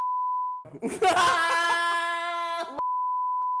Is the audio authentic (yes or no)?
yes